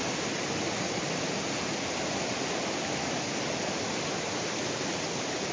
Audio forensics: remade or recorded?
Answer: recorded